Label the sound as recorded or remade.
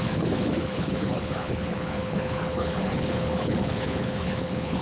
remade